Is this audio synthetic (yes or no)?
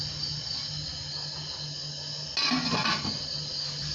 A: no